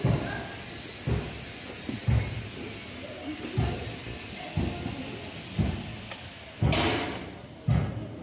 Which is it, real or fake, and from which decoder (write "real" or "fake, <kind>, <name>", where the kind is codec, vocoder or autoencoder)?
real